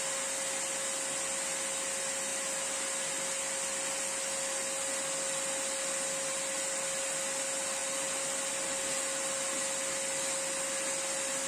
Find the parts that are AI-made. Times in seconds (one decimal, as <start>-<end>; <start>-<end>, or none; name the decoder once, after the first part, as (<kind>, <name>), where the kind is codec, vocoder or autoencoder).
none